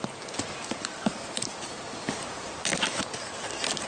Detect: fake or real real